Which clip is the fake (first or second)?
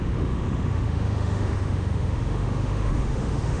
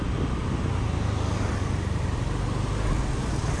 first